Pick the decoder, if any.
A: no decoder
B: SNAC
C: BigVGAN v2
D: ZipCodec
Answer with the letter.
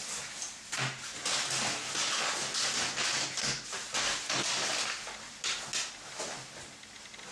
A